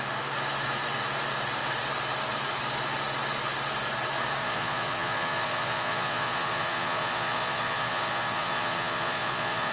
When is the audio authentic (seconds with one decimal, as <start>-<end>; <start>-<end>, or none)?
0.0-4.4